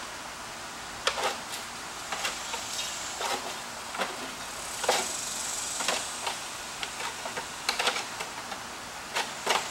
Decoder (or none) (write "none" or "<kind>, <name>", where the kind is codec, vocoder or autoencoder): none